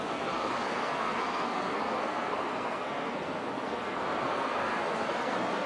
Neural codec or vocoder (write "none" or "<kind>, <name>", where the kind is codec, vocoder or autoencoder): codec, SNAC